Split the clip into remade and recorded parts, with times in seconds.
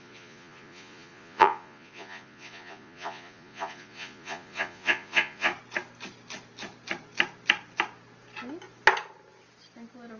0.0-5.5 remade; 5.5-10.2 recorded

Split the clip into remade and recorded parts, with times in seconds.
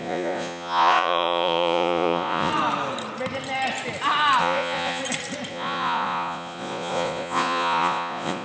0.0-2.5 remade; 2.5-4.4 recorded; 4.4-5.0 remade; 5.0-5.5 recorded; 5.5-8.4 remade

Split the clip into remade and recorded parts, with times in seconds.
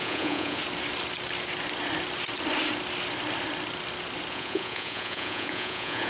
0.0-0.6 remade; 0.6-4.3 recorded; 4.3-6.1 remade